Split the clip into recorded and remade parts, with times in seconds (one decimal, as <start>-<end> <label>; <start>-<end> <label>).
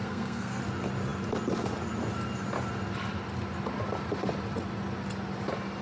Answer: 0.0-0.6 remade; 0.6-5.8 recorded